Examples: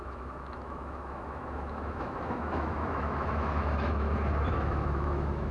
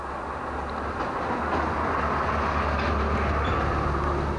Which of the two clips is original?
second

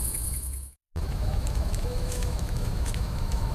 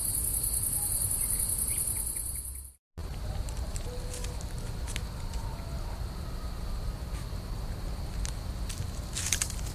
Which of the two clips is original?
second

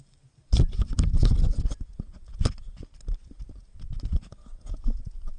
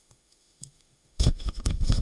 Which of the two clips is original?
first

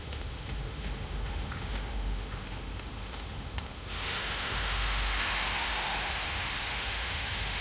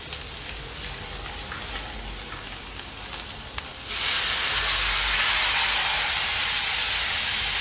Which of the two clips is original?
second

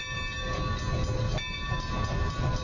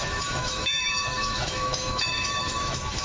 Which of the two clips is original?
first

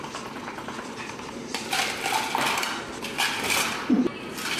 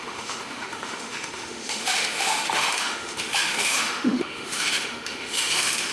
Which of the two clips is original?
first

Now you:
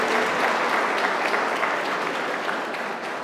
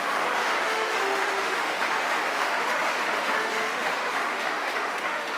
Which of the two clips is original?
first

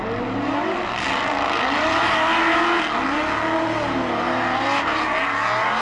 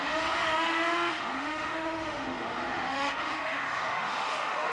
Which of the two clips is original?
first